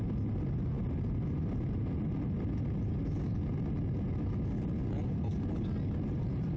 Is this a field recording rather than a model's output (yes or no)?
yes